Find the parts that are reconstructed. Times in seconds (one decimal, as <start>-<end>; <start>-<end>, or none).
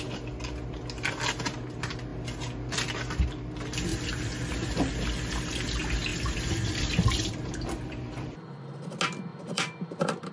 6.1-8.7; 9.3-10.3